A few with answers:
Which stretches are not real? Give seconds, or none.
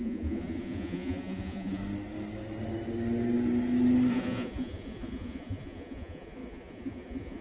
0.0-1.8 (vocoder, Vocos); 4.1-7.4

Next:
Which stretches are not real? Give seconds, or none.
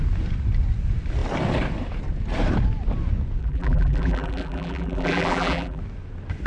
3.4-5.8 (vocoder, BigVGAN v2)